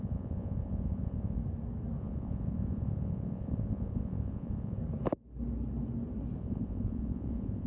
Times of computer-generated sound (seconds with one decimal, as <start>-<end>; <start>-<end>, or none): 0.0-1.4; 2.0-4.8; 6.4-7.7